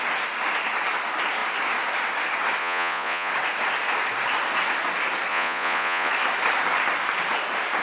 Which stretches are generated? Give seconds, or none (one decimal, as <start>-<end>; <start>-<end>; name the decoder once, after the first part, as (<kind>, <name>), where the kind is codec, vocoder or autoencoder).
2.6-3.3 (vocoder, Vocos); 5.3-6.1